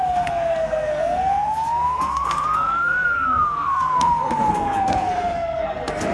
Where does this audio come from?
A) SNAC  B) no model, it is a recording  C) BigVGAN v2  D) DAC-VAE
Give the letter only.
A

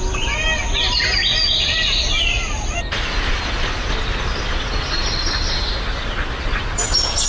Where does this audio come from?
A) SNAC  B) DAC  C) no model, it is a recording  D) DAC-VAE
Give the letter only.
C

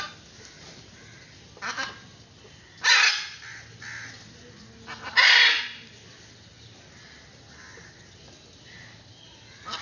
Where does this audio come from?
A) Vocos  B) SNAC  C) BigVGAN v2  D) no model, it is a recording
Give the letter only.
D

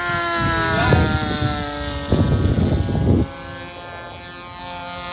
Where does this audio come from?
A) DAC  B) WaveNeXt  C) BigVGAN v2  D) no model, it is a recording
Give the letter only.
D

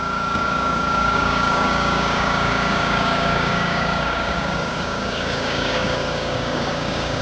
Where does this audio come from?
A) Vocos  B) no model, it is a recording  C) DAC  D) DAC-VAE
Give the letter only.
C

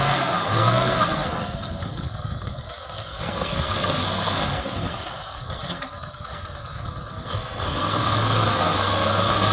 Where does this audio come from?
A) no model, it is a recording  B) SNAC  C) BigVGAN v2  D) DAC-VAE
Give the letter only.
B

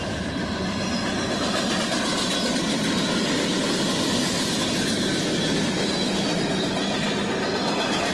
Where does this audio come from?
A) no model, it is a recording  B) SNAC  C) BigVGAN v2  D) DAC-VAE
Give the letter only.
A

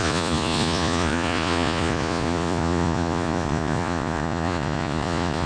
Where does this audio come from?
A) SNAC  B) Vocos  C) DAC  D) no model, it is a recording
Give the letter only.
B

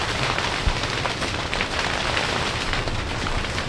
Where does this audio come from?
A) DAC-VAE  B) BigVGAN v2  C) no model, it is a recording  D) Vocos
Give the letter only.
B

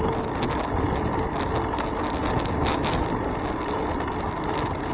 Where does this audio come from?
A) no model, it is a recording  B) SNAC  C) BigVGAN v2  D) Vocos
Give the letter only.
A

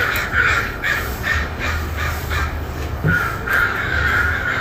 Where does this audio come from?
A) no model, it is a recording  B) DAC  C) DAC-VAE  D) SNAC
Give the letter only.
B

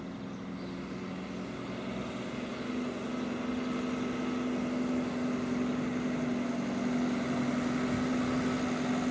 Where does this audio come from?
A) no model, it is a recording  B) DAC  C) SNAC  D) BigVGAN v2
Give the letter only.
A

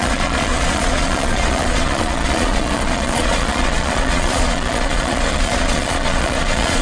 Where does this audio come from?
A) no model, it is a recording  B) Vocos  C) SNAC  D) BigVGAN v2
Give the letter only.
B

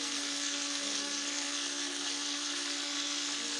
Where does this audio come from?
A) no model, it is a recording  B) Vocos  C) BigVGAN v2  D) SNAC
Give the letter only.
D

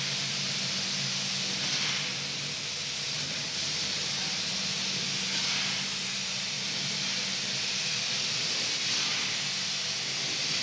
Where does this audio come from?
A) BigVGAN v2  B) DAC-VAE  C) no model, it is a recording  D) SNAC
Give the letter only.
C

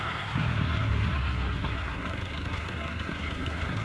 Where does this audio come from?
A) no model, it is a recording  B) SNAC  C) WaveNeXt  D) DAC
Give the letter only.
B